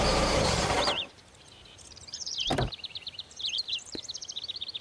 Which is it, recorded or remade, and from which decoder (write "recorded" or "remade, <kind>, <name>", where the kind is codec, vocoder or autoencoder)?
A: remade, vocoder, BigVGAN v2